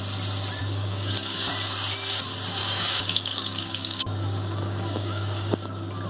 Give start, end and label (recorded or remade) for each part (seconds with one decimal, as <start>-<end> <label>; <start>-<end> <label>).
0.0-0.6 recorded; 0.6-1.5 remade; 1.5-2.6 recorded; 2.6-5.5 remade; 5.5-6.1 recorded